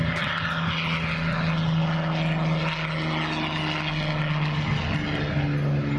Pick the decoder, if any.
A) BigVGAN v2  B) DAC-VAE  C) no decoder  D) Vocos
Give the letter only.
C